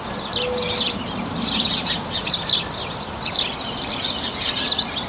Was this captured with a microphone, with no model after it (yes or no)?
yes